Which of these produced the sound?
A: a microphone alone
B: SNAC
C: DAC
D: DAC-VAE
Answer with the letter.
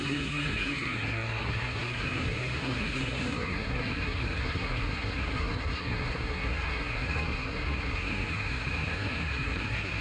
B